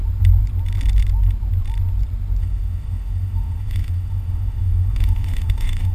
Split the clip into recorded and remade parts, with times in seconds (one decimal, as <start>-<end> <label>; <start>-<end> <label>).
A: 0.0-2.4 recorded; 2.4-5.9 remade